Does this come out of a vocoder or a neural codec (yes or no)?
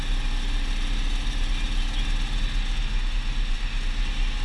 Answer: no